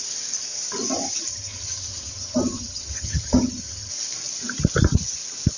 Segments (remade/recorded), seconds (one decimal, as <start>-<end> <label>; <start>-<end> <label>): 0.0-1.3 recorded; 1.3-3.9 remade; 3.9-5.6 recorded

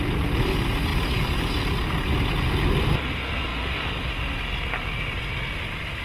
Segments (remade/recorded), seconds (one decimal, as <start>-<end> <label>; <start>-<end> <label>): 0.0-6.0 recorded

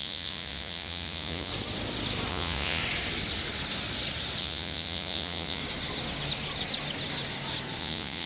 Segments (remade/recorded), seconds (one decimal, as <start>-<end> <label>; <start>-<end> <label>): 0.0-1.5 remade; 1.5-2.3 recorded; 2.3-2.8 remade; 2.8-4.4 recorded; 4.4-5.6 remade; 5.6-7.8 recorded; 7.8-8.3 remade

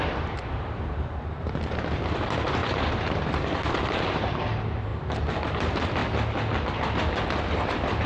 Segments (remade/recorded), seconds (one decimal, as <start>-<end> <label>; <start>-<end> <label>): 0.0-4.9 remade; 4.9-5.5 recorded; 5.5-6.0 remade; 6.0-6.7 recorded; 6.7-8.1 remade

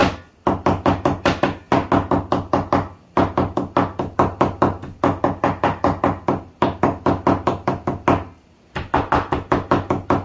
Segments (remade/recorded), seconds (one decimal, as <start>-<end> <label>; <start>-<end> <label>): 0.0-10.2 recorded

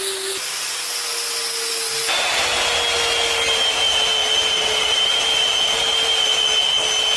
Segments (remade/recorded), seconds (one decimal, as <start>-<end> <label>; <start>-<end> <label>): 0.0-7.2 recorded

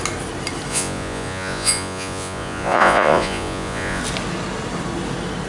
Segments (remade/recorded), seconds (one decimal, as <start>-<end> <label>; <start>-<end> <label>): 0.0-0.7 recorded; 0.7-4.0 remade; 4.0-5.5 recorded